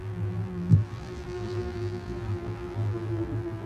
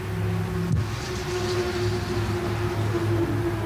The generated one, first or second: first